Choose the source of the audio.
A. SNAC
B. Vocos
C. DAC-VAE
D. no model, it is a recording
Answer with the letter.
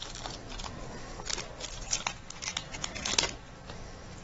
D